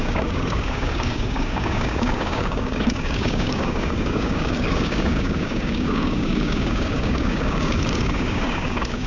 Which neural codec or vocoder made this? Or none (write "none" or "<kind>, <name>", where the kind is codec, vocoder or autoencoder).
codec, DAC